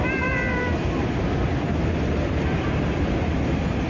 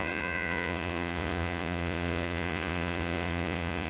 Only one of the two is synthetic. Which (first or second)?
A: second